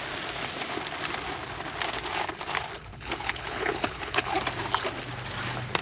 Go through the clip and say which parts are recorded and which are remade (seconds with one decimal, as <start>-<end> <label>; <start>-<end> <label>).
0.0-2.9 recorded; 2.9-4.3 remade; 4.3-5.8 recorded